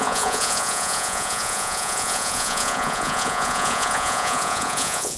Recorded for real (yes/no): no